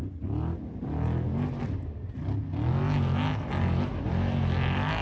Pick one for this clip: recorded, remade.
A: recorded